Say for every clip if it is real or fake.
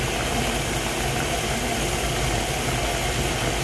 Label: real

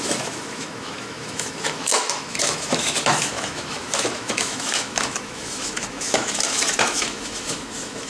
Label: fake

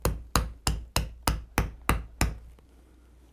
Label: real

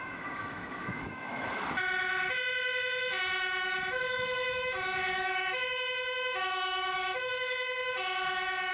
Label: fake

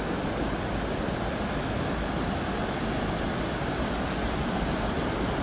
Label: real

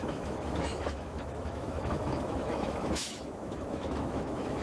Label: fake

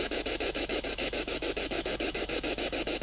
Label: fake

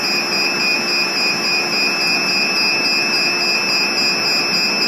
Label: real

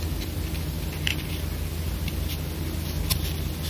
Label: real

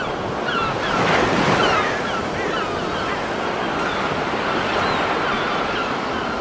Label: real